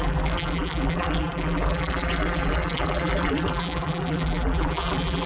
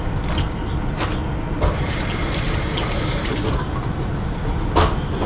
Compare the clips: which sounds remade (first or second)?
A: first